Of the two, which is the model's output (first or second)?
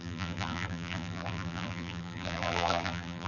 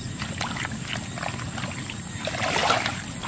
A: first